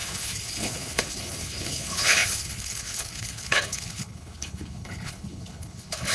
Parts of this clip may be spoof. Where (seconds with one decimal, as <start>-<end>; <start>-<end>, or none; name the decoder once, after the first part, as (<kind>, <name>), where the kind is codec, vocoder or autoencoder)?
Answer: 0.0-6.1 (codec, HILCodec)